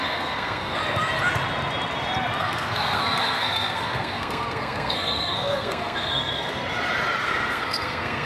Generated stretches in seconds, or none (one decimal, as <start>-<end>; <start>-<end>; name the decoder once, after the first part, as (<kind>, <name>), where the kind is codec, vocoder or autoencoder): 0.0-0.8 (codec, SNAC); 2.4-6.6; 7.2-8.3